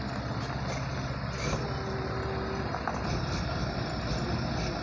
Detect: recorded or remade recorded